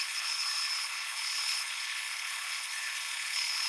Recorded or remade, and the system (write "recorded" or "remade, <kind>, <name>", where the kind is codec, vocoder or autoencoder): remade, codec, HILCodec